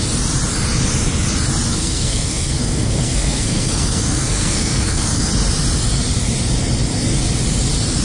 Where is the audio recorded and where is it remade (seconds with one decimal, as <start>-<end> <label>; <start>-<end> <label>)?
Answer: 0.0-1.7 recorded; 1.7-5.3 remade; 5.3-8.0 recorded